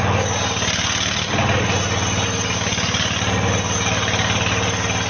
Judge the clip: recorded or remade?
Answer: recorded